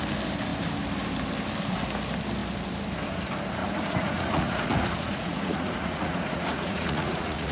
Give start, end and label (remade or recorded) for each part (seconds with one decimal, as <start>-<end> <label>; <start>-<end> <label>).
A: 0.0-3.6 recorded; 3.6-7.5 remade